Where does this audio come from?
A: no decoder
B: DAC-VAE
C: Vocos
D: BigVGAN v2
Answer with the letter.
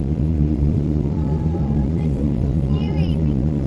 C